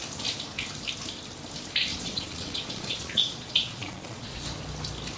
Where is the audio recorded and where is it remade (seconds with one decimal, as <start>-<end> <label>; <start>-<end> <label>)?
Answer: 0.0-1.9 recorded; 1.9-4.4 remade; 4.4-5.2 recorded